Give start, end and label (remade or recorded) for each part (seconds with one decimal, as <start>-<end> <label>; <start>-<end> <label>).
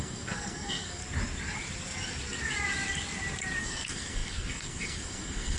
0.0-1.0 remade; 1.0-3.6 recorded; 3.6-5.6 remade